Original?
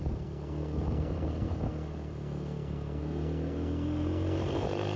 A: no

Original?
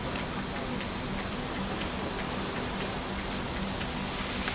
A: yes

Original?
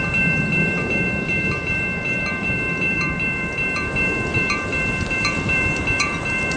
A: no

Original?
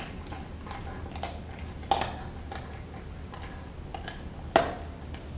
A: yes